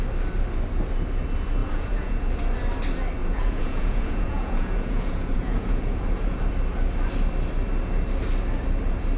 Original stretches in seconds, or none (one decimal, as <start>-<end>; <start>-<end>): 0.0-1.6; 2.2-3.2; 6.5-9.2